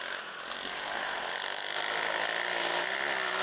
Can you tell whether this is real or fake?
real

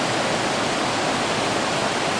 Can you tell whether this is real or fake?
real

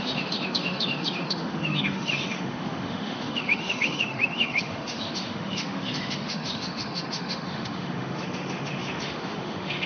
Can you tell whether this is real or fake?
fake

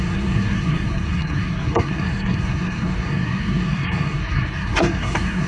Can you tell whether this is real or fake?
fake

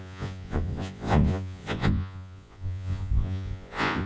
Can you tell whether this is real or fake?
fake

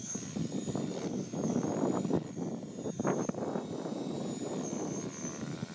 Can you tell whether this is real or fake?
real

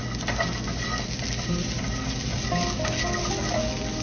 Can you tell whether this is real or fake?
real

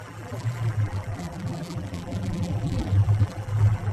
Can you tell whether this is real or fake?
fake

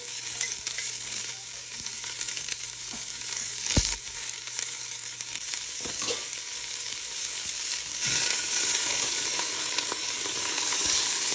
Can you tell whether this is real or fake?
fake